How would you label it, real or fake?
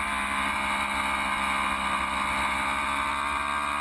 real